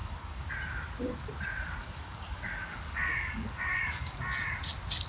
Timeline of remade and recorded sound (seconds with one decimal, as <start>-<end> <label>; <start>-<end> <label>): 0.0-0.5 remade; 0.5-1.8 recorded; 1.8-4.2 remade; 4.2-5.1 recorded